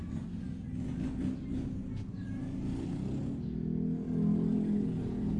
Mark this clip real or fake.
real